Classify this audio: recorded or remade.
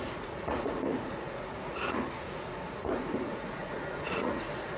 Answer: remade